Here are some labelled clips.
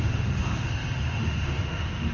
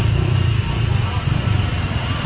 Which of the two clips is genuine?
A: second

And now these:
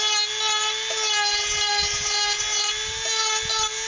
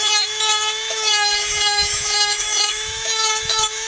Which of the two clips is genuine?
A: first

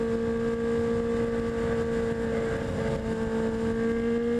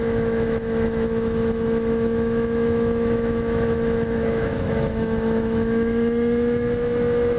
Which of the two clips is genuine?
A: first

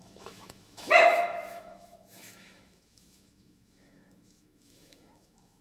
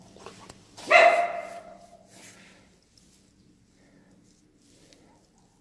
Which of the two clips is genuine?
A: second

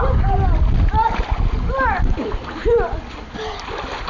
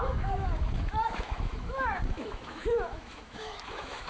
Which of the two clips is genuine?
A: first